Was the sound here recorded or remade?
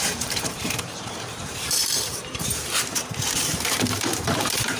remade